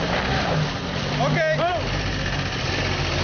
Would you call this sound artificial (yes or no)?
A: no